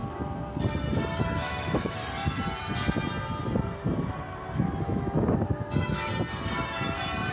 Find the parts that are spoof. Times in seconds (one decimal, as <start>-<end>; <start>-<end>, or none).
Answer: 1.2-2.0; 4.8-6.1